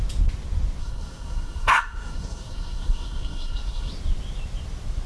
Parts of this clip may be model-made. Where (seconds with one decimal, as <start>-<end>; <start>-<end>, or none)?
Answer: 0.8-3.9